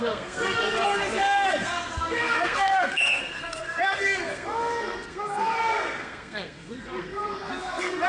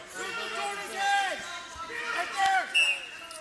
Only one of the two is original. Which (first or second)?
second